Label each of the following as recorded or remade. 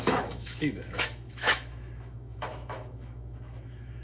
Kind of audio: remade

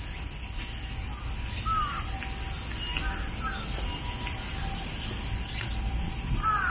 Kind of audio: recorded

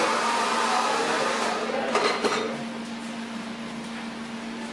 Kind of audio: recorded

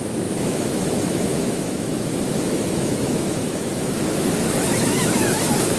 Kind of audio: remade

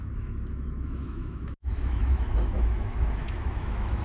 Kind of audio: remade